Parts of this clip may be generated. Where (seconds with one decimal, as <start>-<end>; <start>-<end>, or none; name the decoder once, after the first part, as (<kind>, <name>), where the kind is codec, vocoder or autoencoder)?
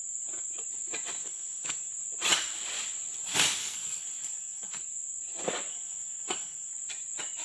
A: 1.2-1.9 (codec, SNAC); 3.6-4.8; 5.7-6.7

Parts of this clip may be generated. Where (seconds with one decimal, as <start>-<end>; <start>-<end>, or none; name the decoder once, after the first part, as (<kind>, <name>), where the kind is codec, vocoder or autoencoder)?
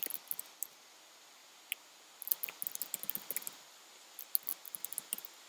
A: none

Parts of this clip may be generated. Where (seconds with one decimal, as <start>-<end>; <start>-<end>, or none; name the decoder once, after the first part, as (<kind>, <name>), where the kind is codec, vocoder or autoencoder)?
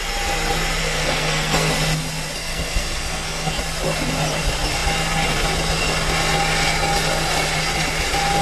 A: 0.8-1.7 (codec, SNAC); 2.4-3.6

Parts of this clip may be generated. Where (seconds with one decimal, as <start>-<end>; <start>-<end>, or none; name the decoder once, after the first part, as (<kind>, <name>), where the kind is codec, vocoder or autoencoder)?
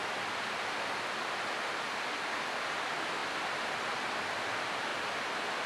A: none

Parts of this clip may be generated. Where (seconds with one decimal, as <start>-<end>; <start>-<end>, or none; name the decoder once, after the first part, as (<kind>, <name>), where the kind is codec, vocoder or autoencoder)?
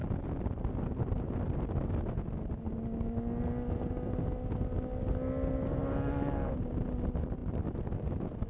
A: none